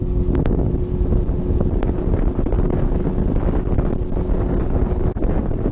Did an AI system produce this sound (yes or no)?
no